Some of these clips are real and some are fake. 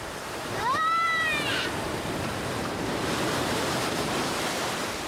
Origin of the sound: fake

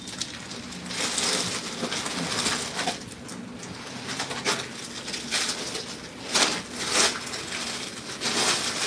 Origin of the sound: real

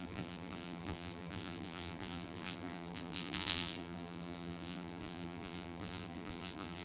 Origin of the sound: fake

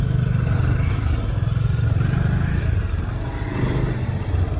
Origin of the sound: real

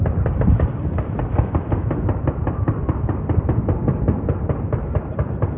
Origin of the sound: fake